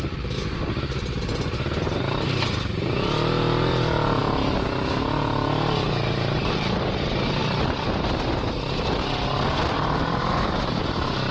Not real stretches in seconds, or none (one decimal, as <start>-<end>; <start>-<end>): none